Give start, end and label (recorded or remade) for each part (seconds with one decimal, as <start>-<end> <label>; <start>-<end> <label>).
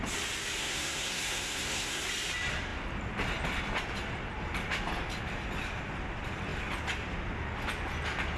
0.0-0.6 recorded; 0.6-2.0 remade; 2.0-8.4 recorded